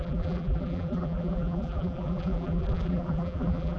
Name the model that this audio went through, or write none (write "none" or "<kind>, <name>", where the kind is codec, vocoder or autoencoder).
vocoder, BigVGAN v2